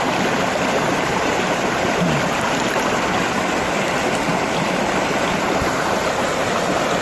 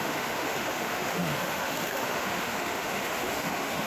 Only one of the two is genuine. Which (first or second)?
first